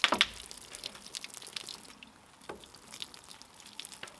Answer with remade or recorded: recorded